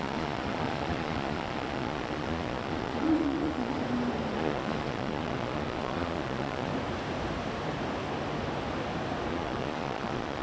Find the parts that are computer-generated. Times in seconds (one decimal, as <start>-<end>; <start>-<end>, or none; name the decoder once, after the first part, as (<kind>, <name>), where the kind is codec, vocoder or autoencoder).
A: 0.0-3.8 (vocoder, Vocos); 4.3-6.7; 9.3-10.4